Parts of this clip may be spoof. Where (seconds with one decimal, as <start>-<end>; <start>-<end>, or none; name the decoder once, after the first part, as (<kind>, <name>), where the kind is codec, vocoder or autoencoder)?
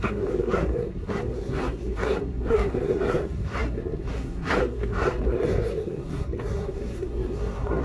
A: 0.0-7.8 (codec, SNAC)